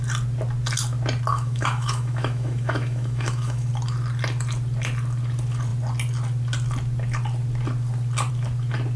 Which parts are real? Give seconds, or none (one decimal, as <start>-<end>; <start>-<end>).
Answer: 0.0-1.3; 3.7-9.0